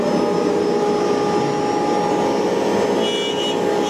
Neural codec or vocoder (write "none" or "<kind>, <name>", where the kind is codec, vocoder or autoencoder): none